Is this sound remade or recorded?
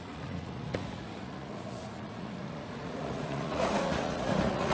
remade